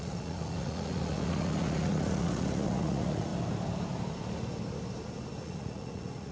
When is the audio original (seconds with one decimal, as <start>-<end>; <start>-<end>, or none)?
3.3-5.4

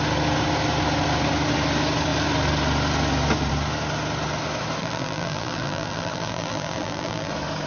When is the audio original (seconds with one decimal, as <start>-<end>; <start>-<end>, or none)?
0.0-4.8; 7.3-7.7

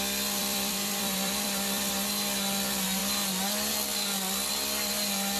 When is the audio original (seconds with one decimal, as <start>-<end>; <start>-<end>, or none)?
0.0-0.4; 1.9-5.4

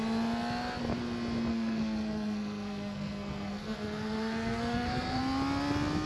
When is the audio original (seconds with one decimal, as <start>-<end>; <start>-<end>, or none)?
0.0-1.5; 5.2-6.1

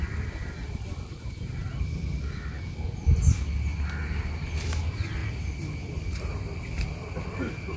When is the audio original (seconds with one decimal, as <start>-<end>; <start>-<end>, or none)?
0.0-1.6; 2.2-5.2; 6.3-7.8

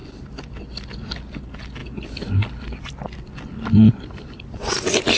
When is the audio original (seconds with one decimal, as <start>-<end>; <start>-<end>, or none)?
0.0-5.2